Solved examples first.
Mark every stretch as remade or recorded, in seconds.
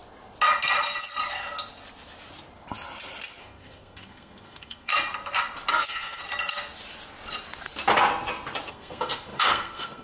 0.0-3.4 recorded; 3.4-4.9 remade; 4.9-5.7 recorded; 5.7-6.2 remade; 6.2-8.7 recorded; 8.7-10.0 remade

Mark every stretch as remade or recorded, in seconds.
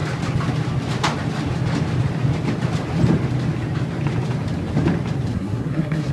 0.0-5.3 recorded; 5.3-6.1 remade